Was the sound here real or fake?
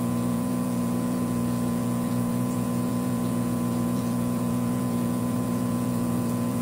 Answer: fake